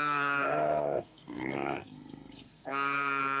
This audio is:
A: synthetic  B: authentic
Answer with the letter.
A